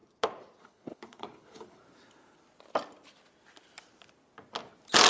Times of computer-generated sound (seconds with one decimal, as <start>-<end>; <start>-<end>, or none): 0.6-1.8